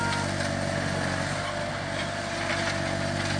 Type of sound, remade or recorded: recorded